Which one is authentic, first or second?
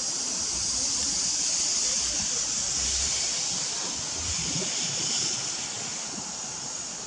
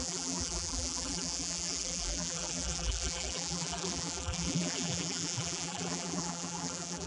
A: first